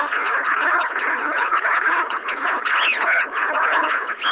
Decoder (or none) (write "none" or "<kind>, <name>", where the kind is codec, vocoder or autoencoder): codec, HILCodec